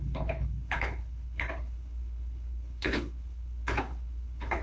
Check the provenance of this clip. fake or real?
fake